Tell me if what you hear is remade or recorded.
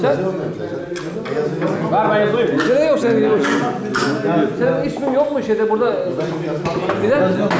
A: recorded